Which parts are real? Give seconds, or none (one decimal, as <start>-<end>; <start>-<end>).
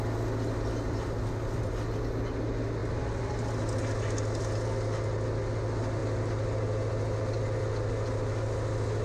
0.0-9.0